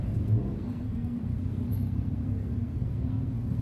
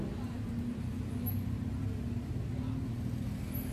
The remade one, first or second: first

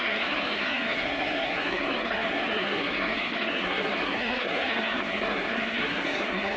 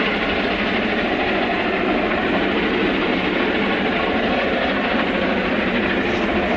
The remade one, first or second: first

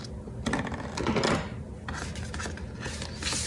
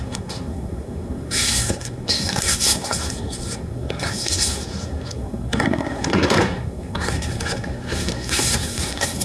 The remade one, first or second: second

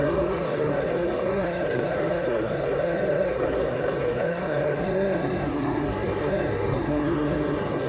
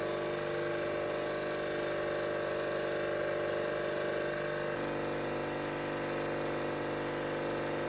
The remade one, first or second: first